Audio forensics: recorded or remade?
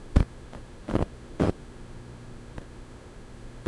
remade